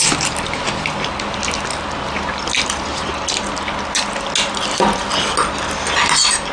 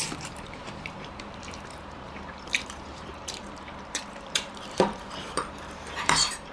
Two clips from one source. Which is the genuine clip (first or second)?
first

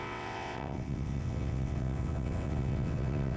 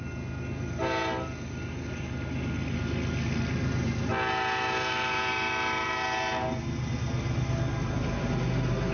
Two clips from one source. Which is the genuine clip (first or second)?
second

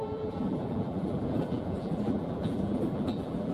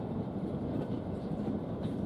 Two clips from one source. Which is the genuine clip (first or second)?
second